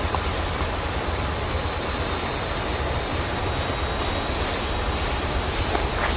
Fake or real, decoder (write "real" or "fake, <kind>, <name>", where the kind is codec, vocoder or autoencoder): real